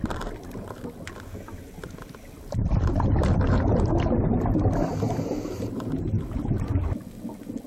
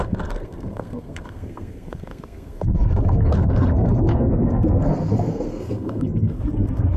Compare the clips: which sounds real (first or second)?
first